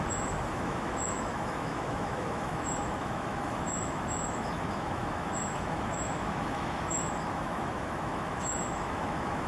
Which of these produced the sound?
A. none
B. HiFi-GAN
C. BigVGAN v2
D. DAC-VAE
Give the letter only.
D